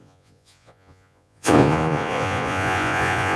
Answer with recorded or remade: remade